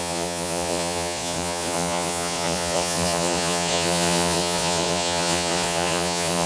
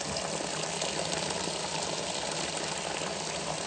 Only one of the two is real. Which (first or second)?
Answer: second